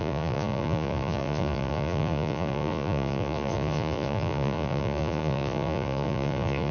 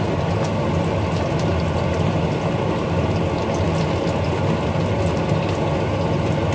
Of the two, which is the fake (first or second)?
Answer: first